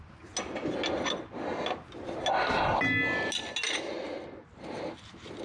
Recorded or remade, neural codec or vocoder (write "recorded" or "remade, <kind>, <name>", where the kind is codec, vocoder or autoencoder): recorded